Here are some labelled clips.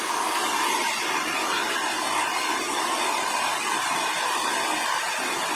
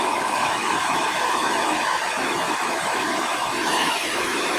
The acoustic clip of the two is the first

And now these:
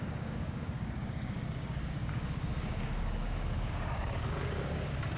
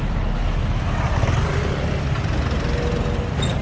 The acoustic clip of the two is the second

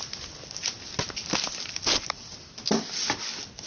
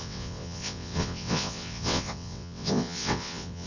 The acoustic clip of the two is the first